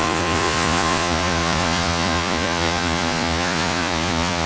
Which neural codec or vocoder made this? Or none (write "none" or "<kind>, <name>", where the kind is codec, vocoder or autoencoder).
vocoder, Vocos